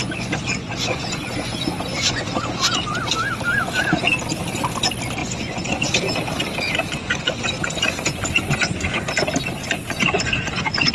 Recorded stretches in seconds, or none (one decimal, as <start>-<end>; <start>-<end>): 3.0-5.2; 6.0-7.0; 9.0-9.5

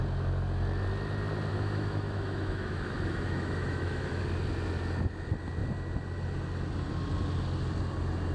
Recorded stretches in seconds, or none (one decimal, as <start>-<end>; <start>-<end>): 0.0-1.5; 4.2-8.3

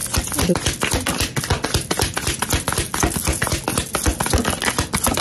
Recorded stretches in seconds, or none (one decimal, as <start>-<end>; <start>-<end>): 0.0-5.2

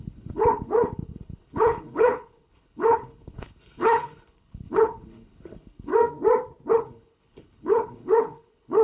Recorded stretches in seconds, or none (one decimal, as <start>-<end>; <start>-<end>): 5.9-6.7

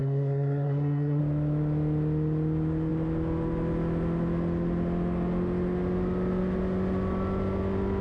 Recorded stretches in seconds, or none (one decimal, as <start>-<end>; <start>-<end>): 1.2-8.0